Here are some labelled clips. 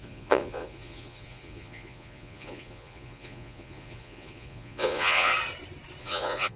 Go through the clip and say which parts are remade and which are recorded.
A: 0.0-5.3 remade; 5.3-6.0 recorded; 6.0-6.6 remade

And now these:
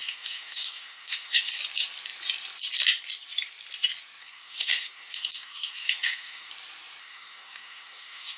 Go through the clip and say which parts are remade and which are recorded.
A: 0.0-1.6 remade; 1.6-4.2 recorded; 4.2-6.5 remade; 6.5-7.0 recorded; 7.0-8.4 remade

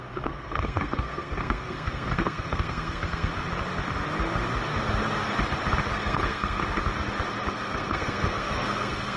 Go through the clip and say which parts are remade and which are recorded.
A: 0.0-3.3 remade; 3.3-5.9 recorded; 5.9-6.6 remade; 6.6-7.5 recorded; 7.5-9.2 remade

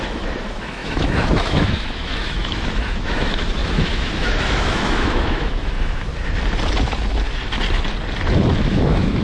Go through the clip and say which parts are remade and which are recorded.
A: 0.0-6.1 remade; 6.1-8.6 recorded; 8.6-9.2 remade

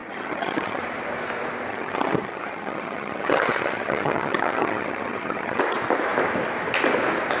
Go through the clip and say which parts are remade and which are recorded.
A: 0.0-0.8 remade; 0.8-1.7 recorded; 1.7-5.6 remade; 5.6-7.4 recorded

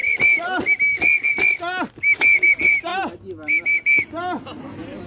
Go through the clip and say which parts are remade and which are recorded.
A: 0.0-5.1 recorded

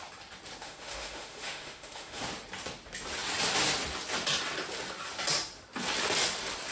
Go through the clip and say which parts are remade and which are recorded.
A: 0.0-0.6 recorded; 0.6-2.2 remade; 2.2-6.7 recorded

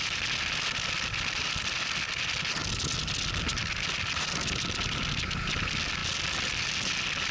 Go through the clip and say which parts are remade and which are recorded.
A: 0.0-7.3 recorded